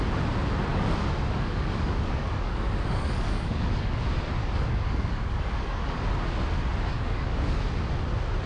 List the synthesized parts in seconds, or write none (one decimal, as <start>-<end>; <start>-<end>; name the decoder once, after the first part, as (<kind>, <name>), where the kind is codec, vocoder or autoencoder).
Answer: 0.7-4.0 (codec, DAC); 4.4-6.0; 6.9-7.6